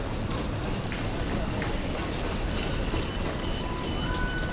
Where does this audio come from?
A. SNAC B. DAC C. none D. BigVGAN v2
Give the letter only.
C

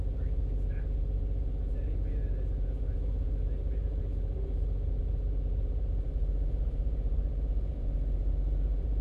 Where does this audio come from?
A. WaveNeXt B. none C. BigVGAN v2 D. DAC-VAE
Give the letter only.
C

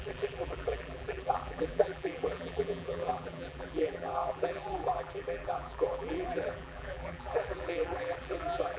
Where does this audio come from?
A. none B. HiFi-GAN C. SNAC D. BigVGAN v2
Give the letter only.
D